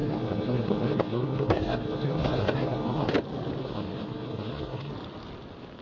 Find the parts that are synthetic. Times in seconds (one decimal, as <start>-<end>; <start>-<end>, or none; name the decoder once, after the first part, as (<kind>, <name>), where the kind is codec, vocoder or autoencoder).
0.0-3.1 (codec, SNAC); 3.6-4.9